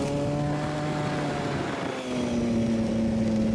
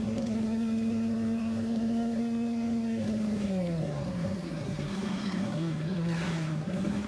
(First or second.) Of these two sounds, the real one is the first